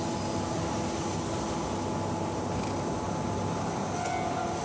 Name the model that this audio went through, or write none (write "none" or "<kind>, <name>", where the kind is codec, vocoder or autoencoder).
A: none